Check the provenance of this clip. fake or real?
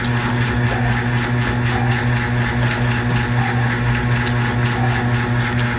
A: real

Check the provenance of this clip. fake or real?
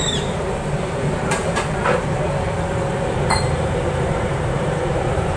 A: fake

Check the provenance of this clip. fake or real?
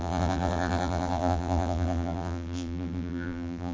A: fake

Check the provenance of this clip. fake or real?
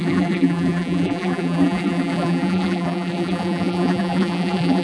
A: fake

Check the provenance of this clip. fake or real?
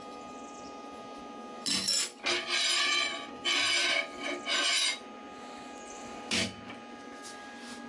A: real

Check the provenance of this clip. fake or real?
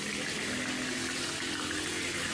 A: real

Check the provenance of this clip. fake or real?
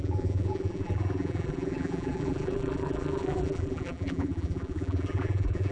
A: fake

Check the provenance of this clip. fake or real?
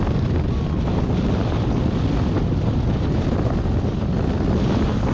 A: real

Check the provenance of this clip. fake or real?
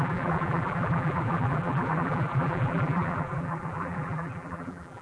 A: fake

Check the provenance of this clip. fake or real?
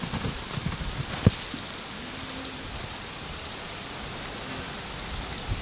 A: real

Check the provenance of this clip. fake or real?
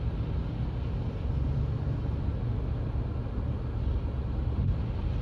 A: real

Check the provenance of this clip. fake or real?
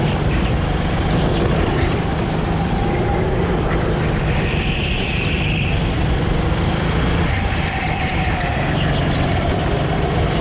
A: fake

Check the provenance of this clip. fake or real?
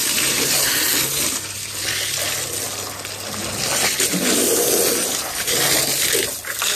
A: real